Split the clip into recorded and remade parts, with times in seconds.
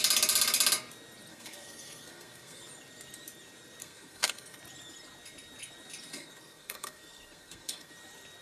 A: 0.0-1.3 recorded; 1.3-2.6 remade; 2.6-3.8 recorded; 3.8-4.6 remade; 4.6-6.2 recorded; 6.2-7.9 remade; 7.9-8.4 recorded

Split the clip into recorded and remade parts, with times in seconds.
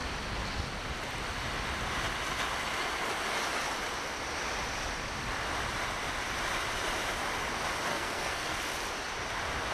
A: 0.0-7.9 recorded; 7.9-8.6 remade; 8.6-9.7 recorded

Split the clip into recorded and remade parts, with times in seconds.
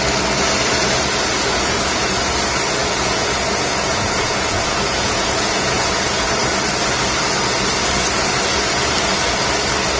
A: 0.0-1.5 recorded; 1.5-2.1 remade; 2.1-2.8 recorded; 2.8-6.4 remade; 6.4-10.0 recorded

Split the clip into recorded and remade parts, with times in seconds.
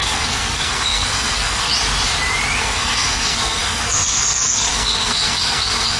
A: 0.0-1.7 remade; 1.7-2.6 recorded; 2.6-6.0 remade